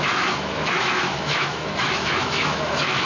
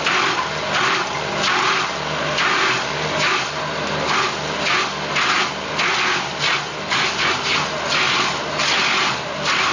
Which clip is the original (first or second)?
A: second